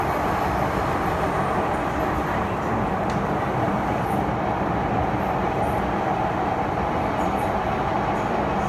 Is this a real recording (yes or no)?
yes